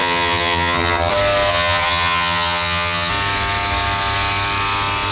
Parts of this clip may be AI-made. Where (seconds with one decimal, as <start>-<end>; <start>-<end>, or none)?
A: 0.0-1.1; 1.5-3.1